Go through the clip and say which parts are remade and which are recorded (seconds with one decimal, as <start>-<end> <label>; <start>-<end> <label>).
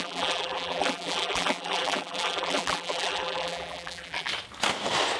0.0-4.3 remade; 4.3-5.2 recorded